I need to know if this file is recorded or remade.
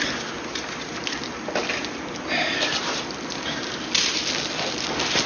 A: recorded